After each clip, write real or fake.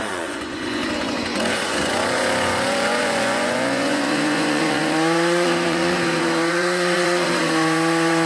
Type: fake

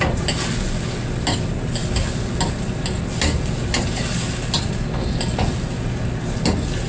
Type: real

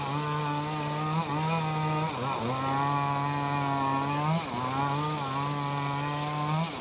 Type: real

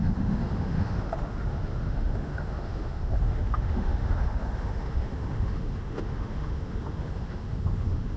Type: fake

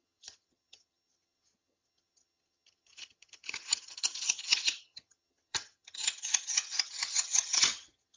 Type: fake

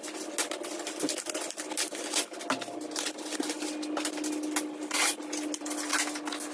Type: real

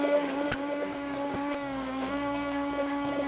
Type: fake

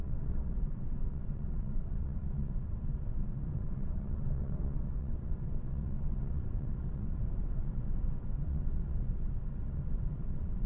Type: fake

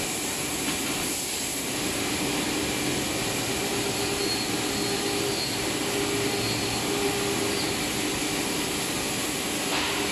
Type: real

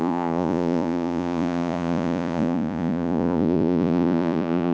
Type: fake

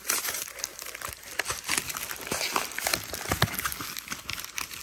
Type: fake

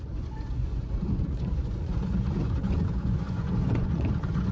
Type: fake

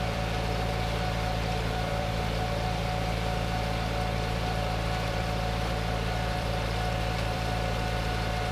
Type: fake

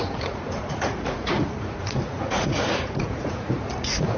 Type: fake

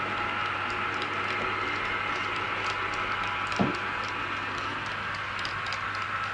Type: real